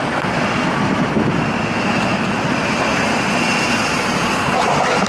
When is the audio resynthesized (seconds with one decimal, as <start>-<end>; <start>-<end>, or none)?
3.9-5.1